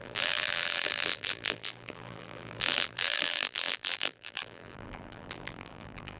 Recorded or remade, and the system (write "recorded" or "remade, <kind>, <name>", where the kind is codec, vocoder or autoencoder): remade, vocoder, BigVGAN v2